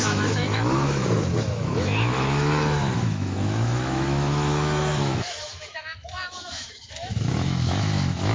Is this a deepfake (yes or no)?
yes